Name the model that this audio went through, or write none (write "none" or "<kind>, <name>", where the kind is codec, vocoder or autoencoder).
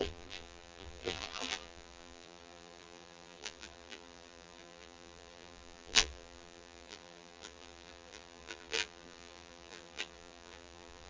vocoder, BigVGAN v2